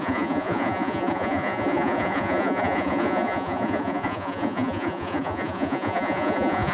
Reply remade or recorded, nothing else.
remade